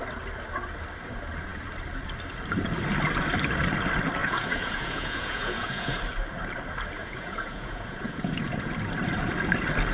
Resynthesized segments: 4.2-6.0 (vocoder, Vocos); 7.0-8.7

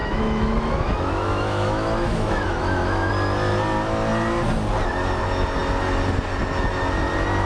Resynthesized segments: 0.0-3.1 (autoencoder, DAC-VAE)

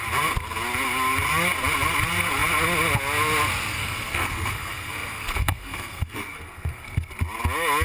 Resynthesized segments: 3.7-7.1 (codec, SNAC)

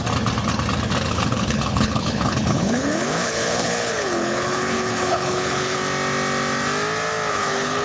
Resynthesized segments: 1.1-5.8 (codec, HILCodec); 7.3-7.8